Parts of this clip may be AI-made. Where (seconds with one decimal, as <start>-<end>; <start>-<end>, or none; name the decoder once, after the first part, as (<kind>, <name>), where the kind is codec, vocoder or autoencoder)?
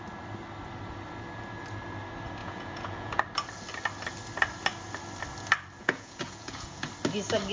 2.4-3.2 (vocoder, Vocos); 5.8-6.9